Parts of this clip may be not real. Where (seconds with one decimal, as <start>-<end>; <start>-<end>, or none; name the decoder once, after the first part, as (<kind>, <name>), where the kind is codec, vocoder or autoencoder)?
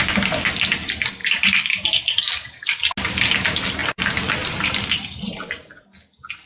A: 1.2-2.2 (vocoder, BigVGAN v2)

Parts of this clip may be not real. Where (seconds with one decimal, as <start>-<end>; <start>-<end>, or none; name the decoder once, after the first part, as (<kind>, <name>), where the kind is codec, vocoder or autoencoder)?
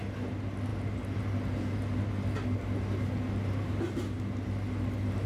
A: none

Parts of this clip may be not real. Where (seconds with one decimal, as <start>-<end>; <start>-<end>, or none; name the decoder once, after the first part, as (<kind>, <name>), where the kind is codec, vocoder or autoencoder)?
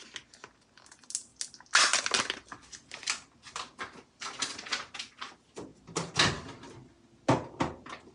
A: none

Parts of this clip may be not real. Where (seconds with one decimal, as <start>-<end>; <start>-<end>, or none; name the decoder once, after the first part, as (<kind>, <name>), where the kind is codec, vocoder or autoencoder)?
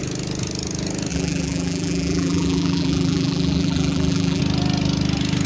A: 1.1-4.4 (vocoder, BigVGAN v2)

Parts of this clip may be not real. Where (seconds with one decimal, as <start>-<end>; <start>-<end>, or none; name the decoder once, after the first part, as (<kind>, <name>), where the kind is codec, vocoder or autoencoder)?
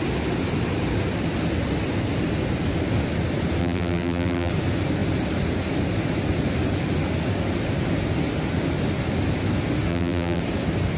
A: 3.6-4.5 (vocoder, BigVGAN v2); 9.9-10.4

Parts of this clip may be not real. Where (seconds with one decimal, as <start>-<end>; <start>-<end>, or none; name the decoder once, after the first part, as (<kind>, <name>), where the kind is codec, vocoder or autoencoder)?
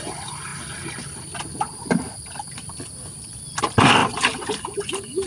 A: 4.0-5.3 (vocoder, BigVGAN v2)